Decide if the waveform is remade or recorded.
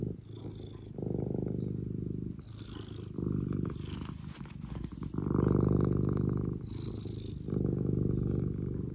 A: recorded